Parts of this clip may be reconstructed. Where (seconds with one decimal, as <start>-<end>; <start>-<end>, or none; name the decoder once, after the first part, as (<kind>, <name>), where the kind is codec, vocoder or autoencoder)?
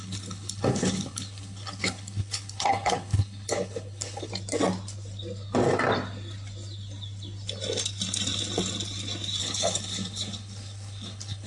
0.0-4.3 (codec, HILCodec); 9.4-11.5